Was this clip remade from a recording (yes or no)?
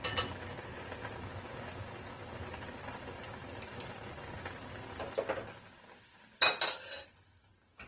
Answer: no